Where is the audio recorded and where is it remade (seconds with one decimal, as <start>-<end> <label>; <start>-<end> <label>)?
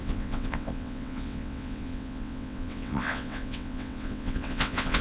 0.0-5.0 remade